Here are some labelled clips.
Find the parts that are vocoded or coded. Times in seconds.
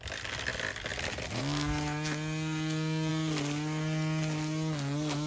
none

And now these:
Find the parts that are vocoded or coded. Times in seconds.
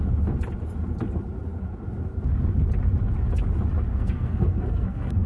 3.9-5.3